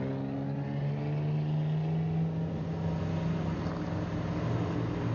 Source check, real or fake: real